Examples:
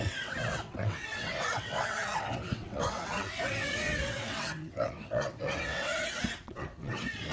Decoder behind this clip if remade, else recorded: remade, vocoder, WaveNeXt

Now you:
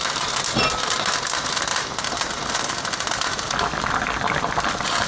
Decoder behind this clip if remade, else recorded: recorded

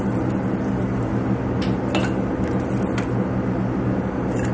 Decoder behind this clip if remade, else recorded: recorded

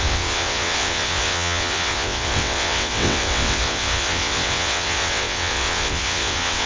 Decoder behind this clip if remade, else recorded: remade, vocoder, WaveNeXt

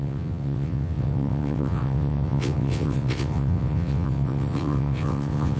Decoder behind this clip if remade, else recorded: remade, vocoder, WaveNeXt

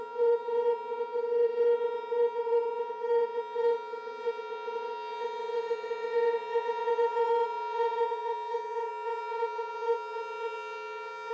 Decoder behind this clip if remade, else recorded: remade, vocoder, WaveNeXt